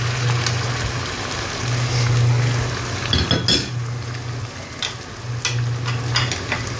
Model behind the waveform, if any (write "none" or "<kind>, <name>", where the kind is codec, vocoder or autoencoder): none